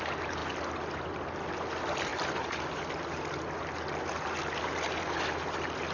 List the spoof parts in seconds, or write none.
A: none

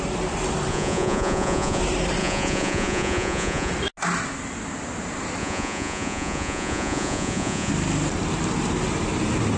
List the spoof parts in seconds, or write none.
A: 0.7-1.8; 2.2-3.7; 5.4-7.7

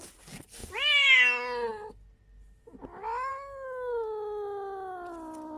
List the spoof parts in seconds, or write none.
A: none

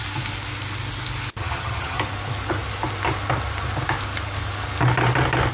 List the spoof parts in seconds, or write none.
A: 1.4-2.0